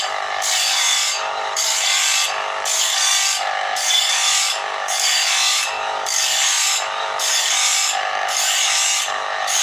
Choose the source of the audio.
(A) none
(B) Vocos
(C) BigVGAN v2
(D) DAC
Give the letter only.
D